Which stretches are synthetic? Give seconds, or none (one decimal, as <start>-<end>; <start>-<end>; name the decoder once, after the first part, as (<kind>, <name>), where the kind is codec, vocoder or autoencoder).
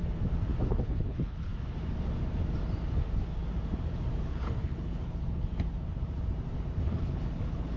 0.7-1.5 (codec, HILCodec); 4.3-5.5; 6.8-7.8